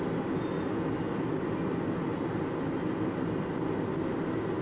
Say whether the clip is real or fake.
real